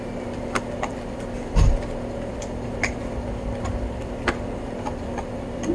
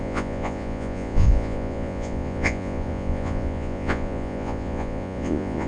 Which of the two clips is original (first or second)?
first